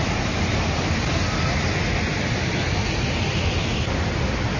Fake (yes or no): no